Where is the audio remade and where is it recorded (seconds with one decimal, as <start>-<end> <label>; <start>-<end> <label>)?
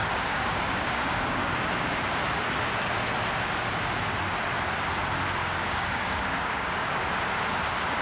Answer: 0.0-2.2 remade; 2.2-5.4 recorded; 5.4-7.0 remade; 7.0-8.0 recorded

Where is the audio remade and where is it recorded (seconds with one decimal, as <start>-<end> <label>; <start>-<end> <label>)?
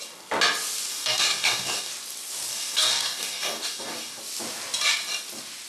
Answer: 0.0-0.9 recorded; 0.9-1.9 remade; 1.9-2.5 recorded; 2.5-4.2 remade; 4.2-5.7 recorded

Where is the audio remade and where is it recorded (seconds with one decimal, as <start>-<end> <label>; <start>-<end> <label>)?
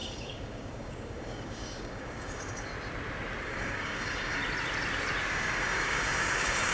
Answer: 0.0-2.7 remade; 2.7-3.4 recorded; 3.4-4.4 remade; 4.4-5.3 recorded; 5.3-6.7 remade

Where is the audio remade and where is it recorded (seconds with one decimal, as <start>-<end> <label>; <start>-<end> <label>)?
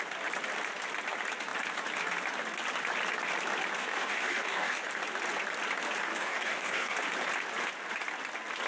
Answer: 0.0-3.8 recorded; 3.8-4.9 remade; 4.9-6.1 recorded; 6.1-7.0 remade; 7.0-8.7 recorded